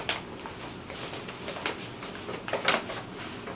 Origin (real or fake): real